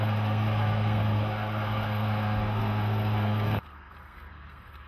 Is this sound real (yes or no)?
no